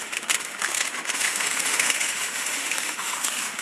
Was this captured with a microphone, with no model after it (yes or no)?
no